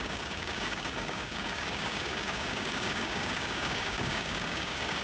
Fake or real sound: fake